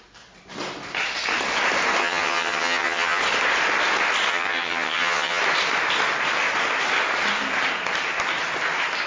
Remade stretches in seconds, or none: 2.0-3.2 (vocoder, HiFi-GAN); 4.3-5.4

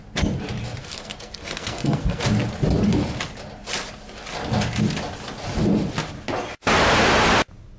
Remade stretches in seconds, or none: 0.8-2.2 (codec, SNAC)

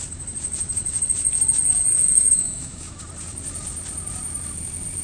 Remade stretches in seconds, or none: 1.9-3.0 (autoencoder, DAC-VAE)